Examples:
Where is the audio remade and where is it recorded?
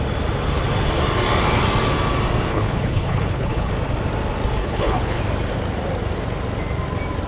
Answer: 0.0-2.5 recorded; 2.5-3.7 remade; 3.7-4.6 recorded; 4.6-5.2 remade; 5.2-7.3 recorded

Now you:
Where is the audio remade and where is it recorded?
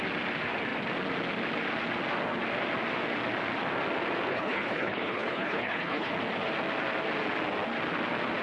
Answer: 0.0-4.3 recorded; 4.3-6.1 remade; 6.1-8.4 recorded